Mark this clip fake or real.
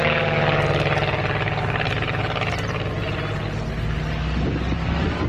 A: real